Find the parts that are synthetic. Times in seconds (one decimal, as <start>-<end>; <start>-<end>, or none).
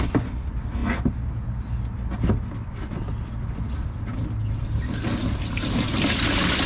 5.2-5.9